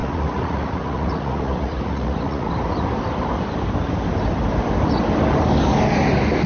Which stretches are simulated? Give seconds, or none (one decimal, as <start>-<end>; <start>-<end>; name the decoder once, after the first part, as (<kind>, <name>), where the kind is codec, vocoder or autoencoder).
0.0-2.5 (vocoder, Vocos)